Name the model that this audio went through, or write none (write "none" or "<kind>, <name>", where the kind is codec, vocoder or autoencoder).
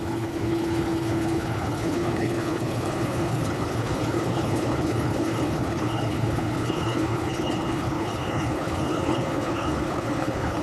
codec, HILCodec